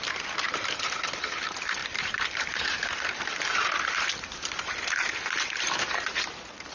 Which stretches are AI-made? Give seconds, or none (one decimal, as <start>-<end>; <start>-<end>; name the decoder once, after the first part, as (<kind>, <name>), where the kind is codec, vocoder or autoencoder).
1.8-5.7 (vocoder, BigVGAN v2)